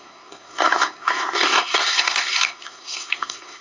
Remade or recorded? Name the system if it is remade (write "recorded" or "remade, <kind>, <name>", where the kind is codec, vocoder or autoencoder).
remade, codec, SNAC